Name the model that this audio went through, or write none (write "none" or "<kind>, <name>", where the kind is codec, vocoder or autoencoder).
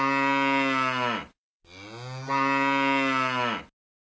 none